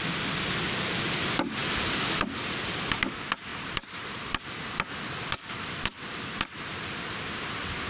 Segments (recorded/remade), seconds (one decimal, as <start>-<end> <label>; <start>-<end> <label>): 0.0-1.6 recorded; 1.6-2.4 remade; 2.4-3.5 recorded; 3.5-6.9 remade; 6.9-7.9 recorded